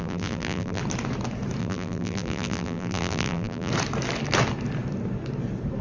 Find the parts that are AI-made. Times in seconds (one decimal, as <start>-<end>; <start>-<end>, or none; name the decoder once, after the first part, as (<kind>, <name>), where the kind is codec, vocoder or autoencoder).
0.0-0.8 (vocoder, BigVGAN v2); 1.6-3.7